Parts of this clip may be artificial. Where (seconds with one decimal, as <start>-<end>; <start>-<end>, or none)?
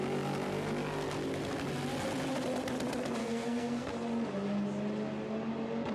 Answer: 3.2-3.9